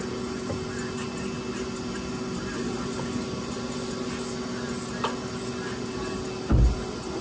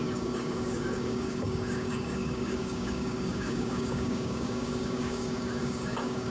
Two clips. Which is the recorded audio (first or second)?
first